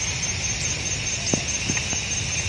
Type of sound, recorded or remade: recorded